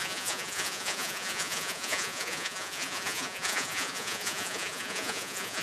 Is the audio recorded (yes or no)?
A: no